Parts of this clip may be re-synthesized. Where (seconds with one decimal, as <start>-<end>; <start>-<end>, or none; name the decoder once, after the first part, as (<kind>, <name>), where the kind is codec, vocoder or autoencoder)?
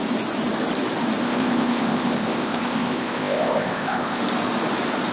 1.2-4.2 (codec, ZipCodec)